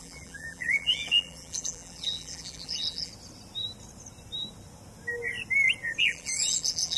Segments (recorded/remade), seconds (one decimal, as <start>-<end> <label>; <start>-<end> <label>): 0.0-3.1 remade; 3.1-6.0 recorded; 6.0-7.0 remade